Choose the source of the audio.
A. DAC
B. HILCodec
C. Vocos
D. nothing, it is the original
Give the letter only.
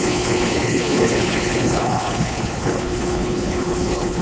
B